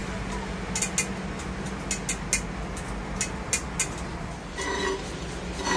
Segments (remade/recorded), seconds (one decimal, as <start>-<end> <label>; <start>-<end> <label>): 0.0-5.8 recorded